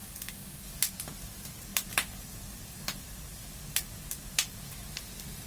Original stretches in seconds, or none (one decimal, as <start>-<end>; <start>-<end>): 0.7-5.5